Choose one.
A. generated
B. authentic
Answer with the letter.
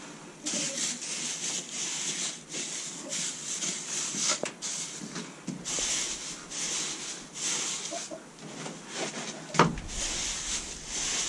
B